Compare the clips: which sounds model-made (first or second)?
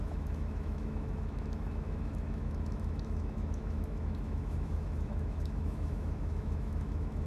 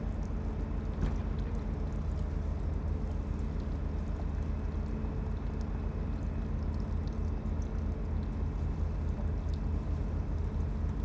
first